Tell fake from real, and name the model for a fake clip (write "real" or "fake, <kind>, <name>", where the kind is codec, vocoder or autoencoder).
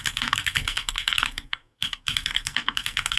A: fake, codec, SNAC